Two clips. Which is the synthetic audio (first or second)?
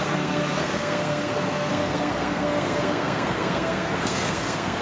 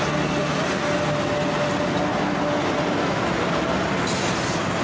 first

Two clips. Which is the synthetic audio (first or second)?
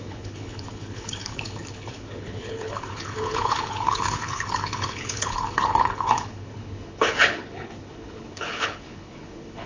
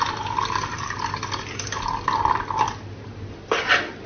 first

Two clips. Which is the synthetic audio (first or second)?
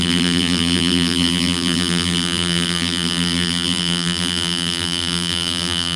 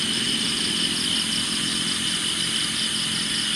first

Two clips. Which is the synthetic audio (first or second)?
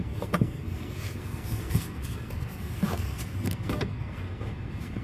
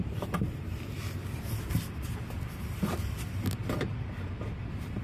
first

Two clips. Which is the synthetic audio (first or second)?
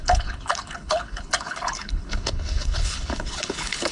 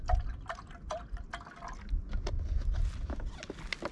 first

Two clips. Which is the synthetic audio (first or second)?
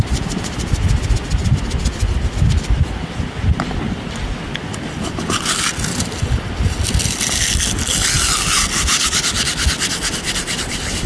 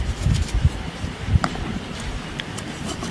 second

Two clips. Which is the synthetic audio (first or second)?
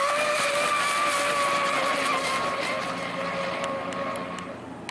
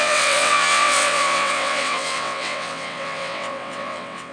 second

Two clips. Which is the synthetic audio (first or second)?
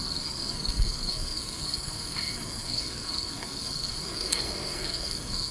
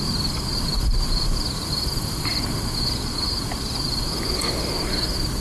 first